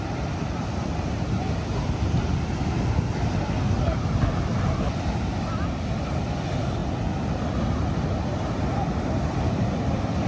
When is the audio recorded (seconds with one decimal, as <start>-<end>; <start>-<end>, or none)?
0.0-10.3